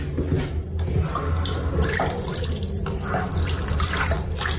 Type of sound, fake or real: real